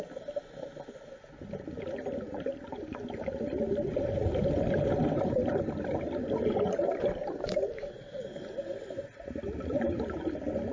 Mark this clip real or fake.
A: real